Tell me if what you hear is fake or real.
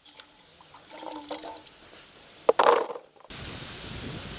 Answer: real